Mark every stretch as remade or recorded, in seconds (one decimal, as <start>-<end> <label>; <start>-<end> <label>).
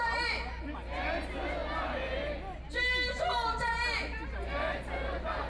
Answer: 0.0-5.5 recorded